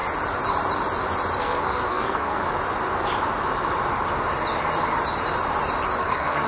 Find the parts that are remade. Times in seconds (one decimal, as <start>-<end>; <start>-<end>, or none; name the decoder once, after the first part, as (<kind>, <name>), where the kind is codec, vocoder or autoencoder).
1.4-2.4 (codec, SNAC); 6.0-6.5